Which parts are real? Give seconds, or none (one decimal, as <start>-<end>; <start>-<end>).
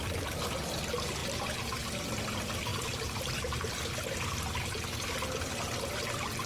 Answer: 0.0-2.7; 5.5-6.5